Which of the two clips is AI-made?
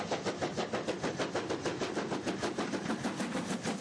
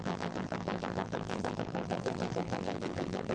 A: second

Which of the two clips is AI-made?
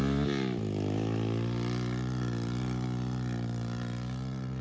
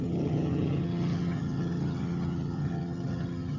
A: second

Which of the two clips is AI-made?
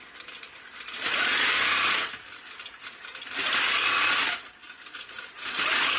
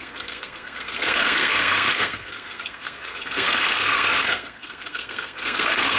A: second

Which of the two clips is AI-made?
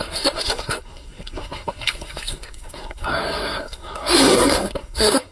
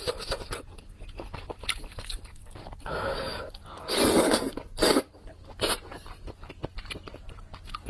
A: first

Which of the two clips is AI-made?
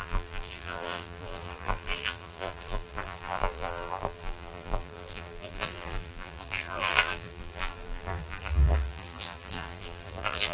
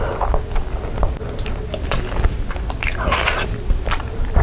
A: first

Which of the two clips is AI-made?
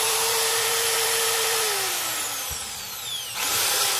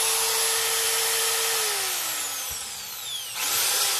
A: first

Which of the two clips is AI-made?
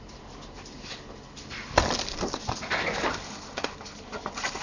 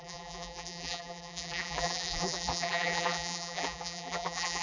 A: second